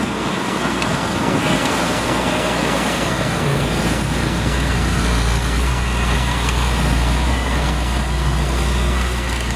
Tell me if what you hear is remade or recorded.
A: remade